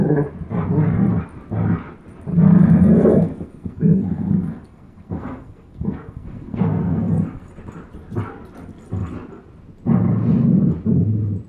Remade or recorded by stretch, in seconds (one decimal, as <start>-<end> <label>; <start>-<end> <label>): 0.0-2.3 recorded; 2.3-7.5 remade; 7.5-11.5 recorded